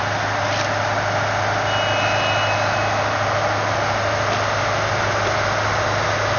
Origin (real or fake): real